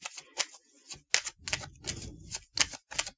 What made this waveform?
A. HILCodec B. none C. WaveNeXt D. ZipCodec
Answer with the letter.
B